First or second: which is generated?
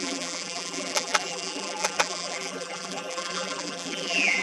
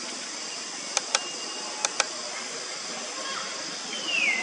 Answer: first